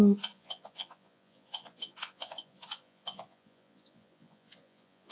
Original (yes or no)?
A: no